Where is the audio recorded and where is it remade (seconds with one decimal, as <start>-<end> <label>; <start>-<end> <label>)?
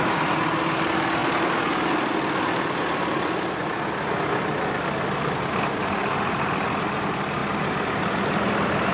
0.0-8.9 recorded